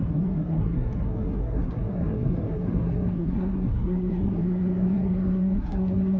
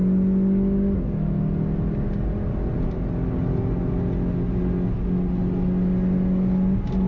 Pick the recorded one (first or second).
second